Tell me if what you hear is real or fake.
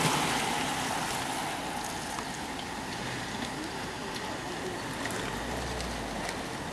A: real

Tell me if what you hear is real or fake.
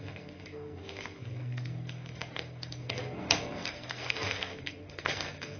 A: fake